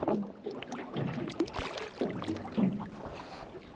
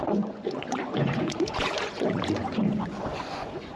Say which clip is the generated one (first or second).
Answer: second